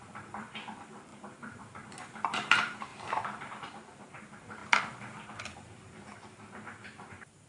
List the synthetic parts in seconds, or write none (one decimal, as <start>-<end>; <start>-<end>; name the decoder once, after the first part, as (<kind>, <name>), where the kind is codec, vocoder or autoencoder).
0.0-2.9 (vocoder, BigVGAN v2); 3.4-7.5